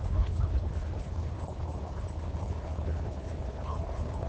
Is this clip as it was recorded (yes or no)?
no